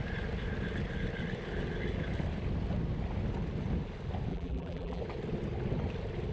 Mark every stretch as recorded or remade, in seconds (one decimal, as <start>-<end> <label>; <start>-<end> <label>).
0.0-4.3 recorded; 4.3-5.0 remade; 5.0-6.3 recorded

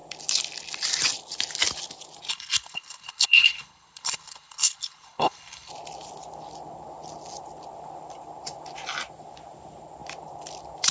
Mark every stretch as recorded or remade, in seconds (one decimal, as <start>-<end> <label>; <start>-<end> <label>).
0.0-2.3 recorded; 2.3-5.7 remade; 5.7-10.9 recorded

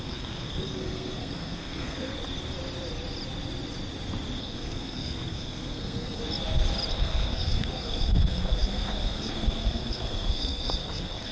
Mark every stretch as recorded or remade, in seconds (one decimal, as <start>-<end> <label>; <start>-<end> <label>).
0.0-2.1 remade; 2.1-4.4 recorded; 4.4-6.2 remade; 6.2-6.9 recorded; 6.9-11.3 remade

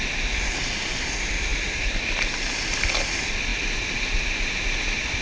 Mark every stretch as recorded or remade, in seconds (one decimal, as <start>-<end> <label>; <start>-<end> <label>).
0.0-5.2 recorded